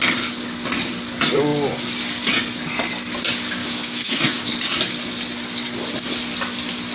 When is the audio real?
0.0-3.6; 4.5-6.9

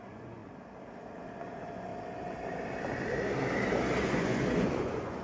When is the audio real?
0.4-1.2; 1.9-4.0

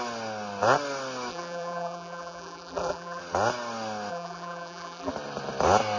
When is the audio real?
0.0-1.3; 3.2-4.1; 5.1-6.0

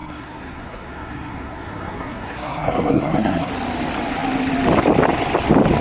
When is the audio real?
3.5-5.8

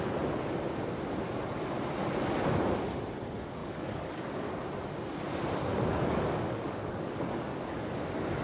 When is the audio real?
0.0-3.6; 4.5-5.7; 7.9-8.4

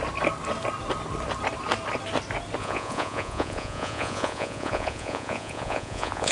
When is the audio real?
0.0-2.6

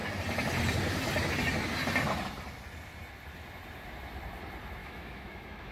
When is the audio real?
0.0-4.8

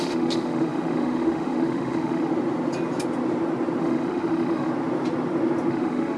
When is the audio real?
2.3-3.8; 4.7-5.7